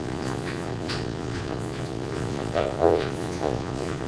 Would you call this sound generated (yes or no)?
yes